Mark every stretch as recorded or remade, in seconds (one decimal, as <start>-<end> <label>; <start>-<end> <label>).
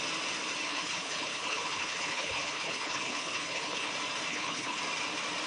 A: 0.0-0.7 recorded; 0.7-3.9 remade; 3.9-4.3 recorded; 4.3-4.8 remade; 4.8-5.5 recorded